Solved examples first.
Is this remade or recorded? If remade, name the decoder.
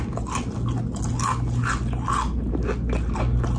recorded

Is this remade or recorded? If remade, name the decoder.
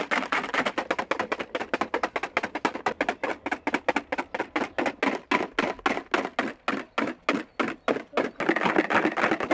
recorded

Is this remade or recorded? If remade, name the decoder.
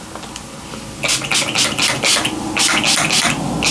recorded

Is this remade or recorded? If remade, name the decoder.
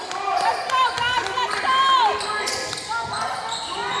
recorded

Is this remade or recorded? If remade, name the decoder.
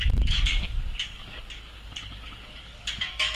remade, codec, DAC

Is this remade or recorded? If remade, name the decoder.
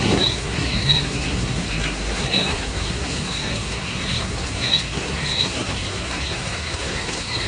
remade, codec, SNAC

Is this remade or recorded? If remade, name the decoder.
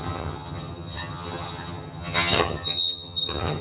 remade, vocoder, HiFi-GAN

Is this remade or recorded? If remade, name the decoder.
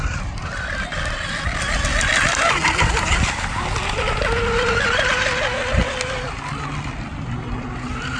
recorded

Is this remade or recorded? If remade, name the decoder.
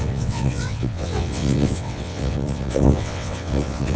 remade, vocoder, WaveNeXt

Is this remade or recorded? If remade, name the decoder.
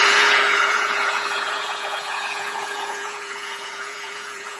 remade, vocoder, Vocos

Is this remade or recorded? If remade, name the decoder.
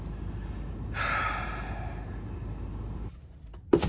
recorded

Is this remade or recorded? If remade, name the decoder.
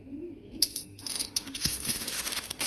remade, autoencoder, DAC-VAE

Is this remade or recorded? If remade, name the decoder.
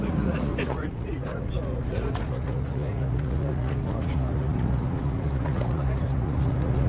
remade, vocoder, Vocos